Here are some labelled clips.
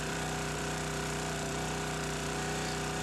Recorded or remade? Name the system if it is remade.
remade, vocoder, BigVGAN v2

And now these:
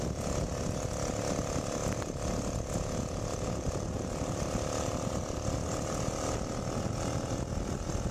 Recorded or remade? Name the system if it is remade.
recorded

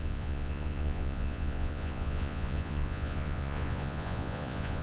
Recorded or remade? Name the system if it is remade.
remade, vocoder, Vocos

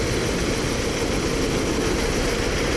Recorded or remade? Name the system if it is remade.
recorded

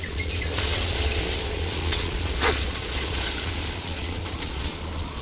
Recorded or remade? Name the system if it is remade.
remade, vocoder, Vocos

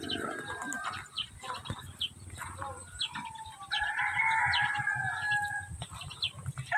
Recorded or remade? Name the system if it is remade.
recorded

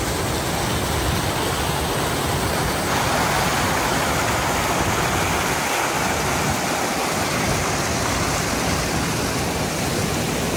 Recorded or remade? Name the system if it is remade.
recorded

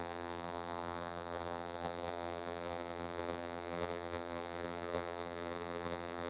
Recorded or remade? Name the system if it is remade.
remade, vocoder, BigVGAN v2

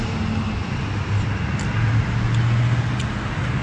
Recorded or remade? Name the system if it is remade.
recorded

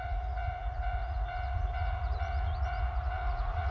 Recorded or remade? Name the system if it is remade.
remade, vocoder, Vocos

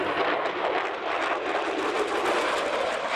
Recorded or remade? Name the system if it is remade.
recorded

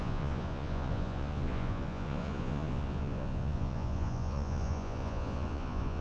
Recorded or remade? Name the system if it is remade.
remade, vocoder, Vocos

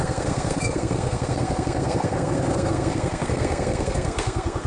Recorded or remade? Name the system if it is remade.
remade, codec, SNAC